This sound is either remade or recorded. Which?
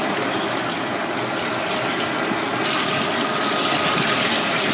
recorded